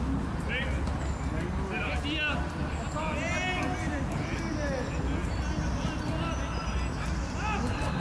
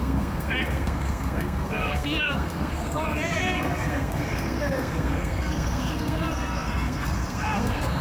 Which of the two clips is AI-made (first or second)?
second